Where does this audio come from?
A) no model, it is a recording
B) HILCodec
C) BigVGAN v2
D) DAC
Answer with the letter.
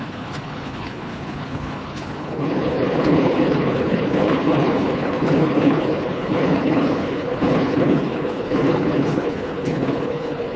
B